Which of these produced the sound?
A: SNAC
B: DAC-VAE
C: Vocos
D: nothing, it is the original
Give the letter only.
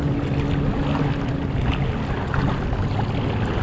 D